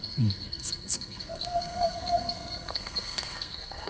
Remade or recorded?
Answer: remade